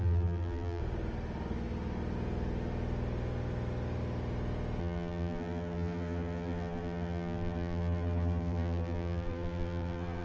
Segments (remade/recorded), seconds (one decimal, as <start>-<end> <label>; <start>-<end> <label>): 0.0-0.8 remade; 0.8-4.8 recorded; 4.8-10.2 remade